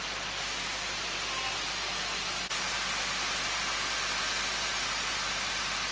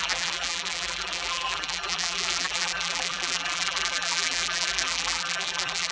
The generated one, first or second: second